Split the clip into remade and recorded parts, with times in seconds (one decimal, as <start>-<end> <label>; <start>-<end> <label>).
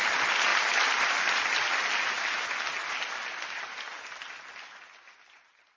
0.0-5.8 recorded